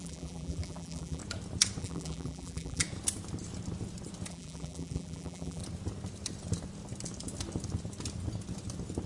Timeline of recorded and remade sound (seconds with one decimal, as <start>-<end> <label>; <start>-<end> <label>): 0.0-1.2 remade; 1.2-1.8 recorded; 1.8-2.8 remade; 2.8-4.3 recorded; 4.3-5.6 remade; 5.6-9.1 recorded